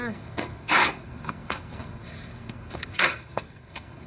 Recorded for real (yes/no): no